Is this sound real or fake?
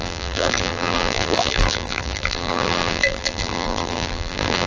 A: fake